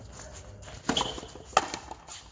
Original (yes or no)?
yes